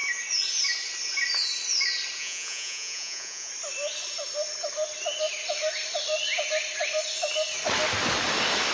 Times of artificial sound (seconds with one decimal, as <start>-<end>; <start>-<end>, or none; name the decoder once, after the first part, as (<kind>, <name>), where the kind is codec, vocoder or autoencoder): 2.2-3.5 (vocoder, Vocos)